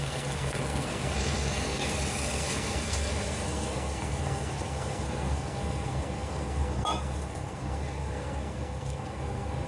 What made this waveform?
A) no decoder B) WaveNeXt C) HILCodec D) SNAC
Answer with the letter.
D